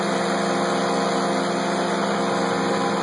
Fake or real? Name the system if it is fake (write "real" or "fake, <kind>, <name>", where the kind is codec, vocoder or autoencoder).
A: real